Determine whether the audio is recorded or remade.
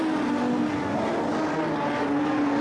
recorded